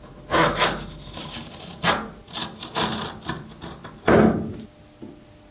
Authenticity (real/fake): real